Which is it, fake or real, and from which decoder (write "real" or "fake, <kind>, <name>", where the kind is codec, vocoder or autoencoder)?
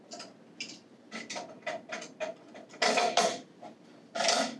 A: real